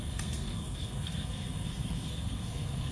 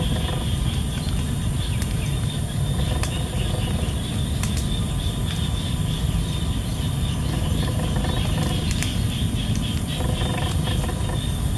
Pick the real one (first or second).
second